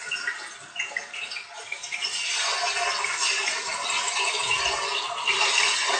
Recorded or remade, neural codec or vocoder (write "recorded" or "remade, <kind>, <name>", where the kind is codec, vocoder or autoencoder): recorded